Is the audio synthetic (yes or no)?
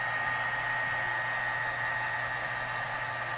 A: no